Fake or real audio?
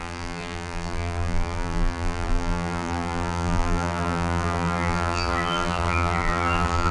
fake